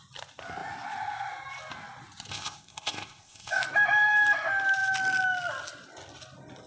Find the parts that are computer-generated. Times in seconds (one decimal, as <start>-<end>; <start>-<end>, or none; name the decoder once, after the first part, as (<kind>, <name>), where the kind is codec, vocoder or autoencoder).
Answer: 2.3-3.6 (codec, ZipCodec)